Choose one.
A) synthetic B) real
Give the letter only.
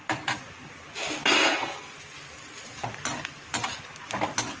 B